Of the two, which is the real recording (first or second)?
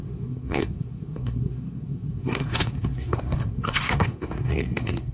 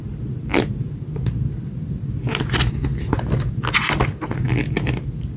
second